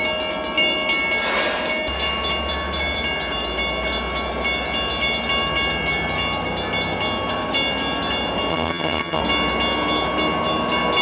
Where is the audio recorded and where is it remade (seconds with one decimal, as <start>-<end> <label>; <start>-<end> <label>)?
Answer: 0.0-8.5 recorded; 8.5-9.2 remade; 9.2-11.0 recorded